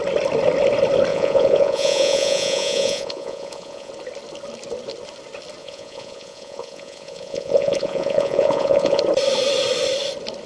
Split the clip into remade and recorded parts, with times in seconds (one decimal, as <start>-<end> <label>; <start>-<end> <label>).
0.0-1.1 recorded; 1.1-3.9 remade; 3.9-5.6 recorded; 5.6-9.0 remade; 9.0-10.5 recorded